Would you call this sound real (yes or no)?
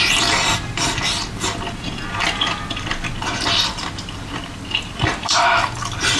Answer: yes